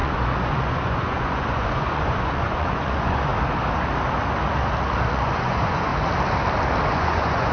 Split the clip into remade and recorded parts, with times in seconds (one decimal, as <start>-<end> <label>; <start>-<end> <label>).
0.0-3.3 remade; 3.3-5.1 recorded; 5.1-5.9 remade; 5.9-6.9 recorded; 6.9-7.5 remade